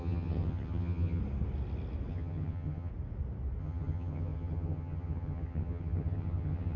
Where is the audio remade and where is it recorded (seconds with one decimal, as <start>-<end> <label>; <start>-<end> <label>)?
0.0-1.2 remade; 1.2-2.1 recorded; 2.1-2.9 remade; 2.9-3.6 recorded; 3.6-6.8 remade